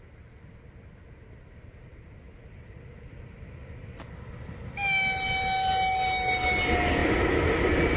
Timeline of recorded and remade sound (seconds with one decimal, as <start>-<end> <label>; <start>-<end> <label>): 0.0-1.9 recorded; 1.9-4.0 remade; 4.0-8.0 recorded